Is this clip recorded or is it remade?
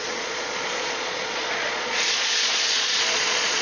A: remade